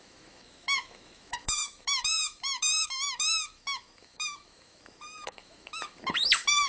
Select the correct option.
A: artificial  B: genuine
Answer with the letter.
A